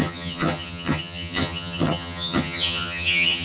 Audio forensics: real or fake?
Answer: fake